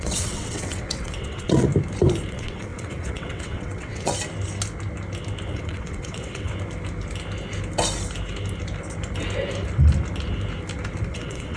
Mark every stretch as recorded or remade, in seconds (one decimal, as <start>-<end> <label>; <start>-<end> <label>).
0.0-1.7 remade; 1.7-2.3 recorded; 2.3-4.1 remade; 4.1-5.5 recorded; 5.5-6.5 remade; 6.5-11.1 recorded; 11.1-11.6 remade